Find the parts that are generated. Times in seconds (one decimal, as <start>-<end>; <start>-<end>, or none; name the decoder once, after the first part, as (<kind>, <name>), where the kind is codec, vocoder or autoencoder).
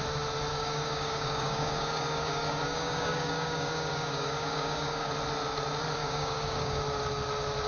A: 0.5-5.1 (codec, DAC); 6.0-6.8